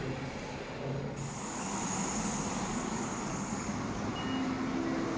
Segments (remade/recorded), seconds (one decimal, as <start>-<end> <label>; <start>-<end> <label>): 0.0-0.9 recorded; 0.9-1.7 remade; 1.7-2.7 recorded; 2.7-3.7 remade; 3.7-5.2 recorded

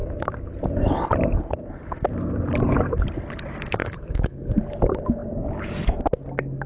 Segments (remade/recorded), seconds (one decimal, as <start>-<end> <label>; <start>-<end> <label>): 0.0-3.8 recorded; 3.8-4.5 remade; 4.5-6.7 recorded

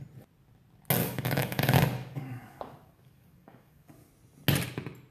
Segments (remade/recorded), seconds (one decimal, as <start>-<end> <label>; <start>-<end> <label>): 0.0-1.0 recorded; 1.0-4.1 remade; 4.1-5.1 recorded

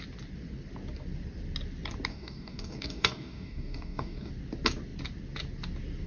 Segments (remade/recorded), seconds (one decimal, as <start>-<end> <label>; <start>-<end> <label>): 0.0-2.1 recorded; 2.1-4.3 remade; 4.3-6.1 recorded

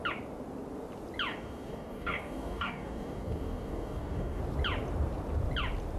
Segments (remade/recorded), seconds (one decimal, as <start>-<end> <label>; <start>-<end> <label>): 0.0-1.3 recorded; 1.3-4.4 remade; 4.4-6.0 recorded

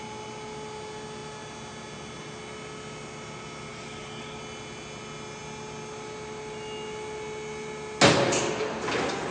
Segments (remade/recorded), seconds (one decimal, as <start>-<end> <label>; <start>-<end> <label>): 0.0-3.7 recorded; 3.7-4.4 remade; 4.4-9.3 recorded

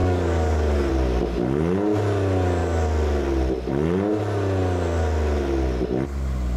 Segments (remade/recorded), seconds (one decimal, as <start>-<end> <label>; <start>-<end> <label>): 0.0-0.9 remade; 0.9-6.6 recorded

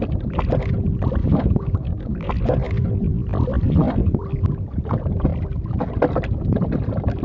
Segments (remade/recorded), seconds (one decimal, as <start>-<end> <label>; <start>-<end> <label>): 0.0-1.2 recorded; 1.2-2.3 remade; 2.3-7.2 recorded